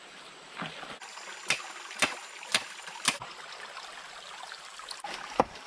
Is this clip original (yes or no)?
yes